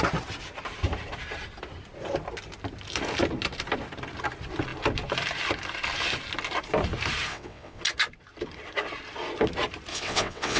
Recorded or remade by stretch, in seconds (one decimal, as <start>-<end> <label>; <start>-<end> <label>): 0.0-7.3 recorded; 7.3-7.8 remade; 7.8-9.9 recorded; 9.9-10.6 remade